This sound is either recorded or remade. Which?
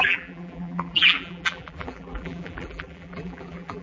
remade